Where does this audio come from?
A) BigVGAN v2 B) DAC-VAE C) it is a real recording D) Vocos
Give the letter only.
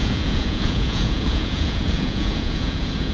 D